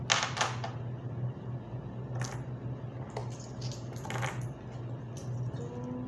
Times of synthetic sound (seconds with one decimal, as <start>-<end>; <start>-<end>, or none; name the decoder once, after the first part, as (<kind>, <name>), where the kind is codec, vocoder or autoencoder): none